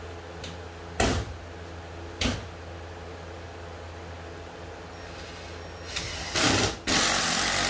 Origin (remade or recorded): recorded